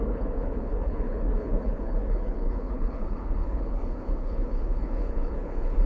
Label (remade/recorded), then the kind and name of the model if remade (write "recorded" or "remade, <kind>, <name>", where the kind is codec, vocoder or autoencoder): remade, codec, HILCodec